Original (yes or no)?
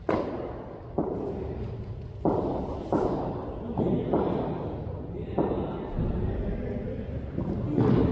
yes